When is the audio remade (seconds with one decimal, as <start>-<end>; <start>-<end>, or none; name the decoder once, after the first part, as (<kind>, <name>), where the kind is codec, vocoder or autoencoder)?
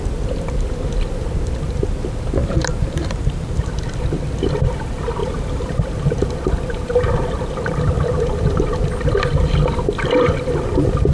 2.4-3.7 (vocoder, BigVGAN v2); 5.2-5.8